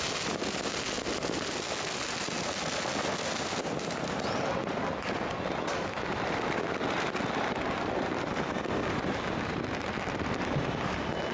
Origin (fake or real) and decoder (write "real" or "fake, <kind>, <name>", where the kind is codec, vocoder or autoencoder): real